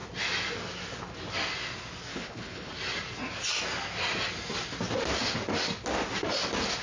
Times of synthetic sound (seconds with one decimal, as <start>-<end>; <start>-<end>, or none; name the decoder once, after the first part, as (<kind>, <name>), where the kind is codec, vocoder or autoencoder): 2.1-2.7 (codec, HILCodec)